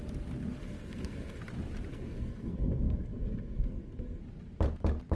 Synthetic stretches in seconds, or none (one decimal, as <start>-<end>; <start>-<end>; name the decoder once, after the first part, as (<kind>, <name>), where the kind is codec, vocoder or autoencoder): 0.6-1.4 (codec, SNAC); 1.9-4.2